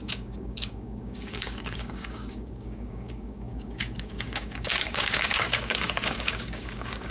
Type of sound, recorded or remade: remade